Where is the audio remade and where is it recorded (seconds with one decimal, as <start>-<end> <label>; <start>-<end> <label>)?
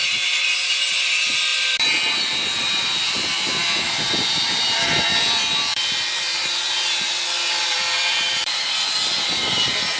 0.0-10.0 remade